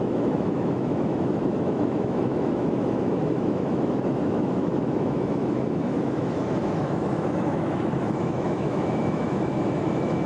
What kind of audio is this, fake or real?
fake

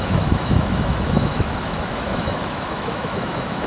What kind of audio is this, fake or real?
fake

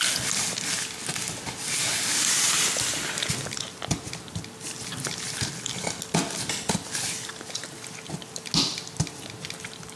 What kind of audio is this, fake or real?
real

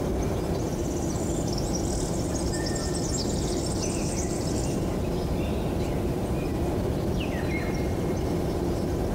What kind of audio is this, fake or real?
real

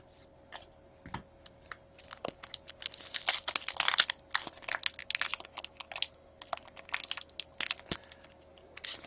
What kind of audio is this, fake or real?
real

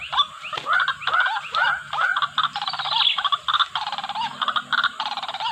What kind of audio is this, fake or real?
real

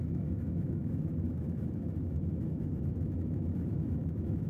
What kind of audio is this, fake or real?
fake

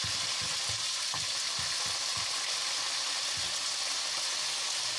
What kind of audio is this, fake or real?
real